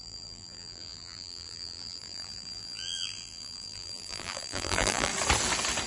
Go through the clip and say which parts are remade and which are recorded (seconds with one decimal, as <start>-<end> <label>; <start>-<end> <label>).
0.0-5.1 remade; 5.1-5.9 recorded